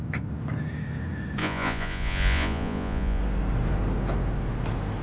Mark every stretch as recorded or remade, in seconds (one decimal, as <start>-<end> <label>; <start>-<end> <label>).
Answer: 0.0-1.4 recorded; 1.4-3.2 remade; 3.2-5.0 recorded